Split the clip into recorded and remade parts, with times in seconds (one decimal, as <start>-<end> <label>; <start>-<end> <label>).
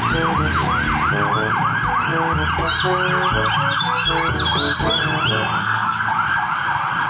0.0-5.6 recorded; 5.6-6.1 remade; 6.1-7.1 recorded